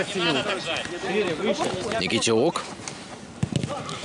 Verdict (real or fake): real